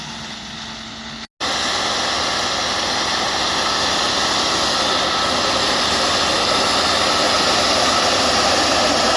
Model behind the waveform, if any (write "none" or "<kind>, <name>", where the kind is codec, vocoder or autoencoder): none